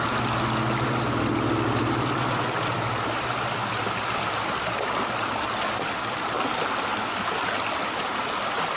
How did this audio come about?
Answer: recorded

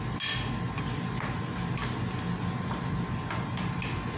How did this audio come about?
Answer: recorded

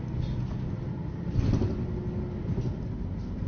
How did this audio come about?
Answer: recorded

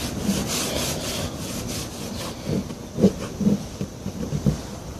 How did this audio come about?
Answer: recorded